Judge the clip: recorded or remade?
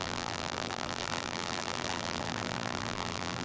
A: remade